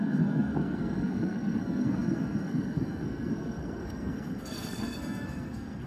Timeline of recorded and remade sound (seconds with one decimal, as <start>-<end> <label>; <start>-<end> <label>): 0.0-5.9 remade